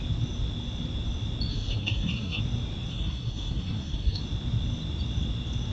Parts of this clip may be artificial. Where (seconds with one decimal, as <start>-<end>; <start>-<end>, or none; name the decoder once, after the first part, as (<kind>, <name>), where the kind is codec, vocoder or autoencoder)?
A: 1.5-2.4 (codec, SNAC); 2.9-4.2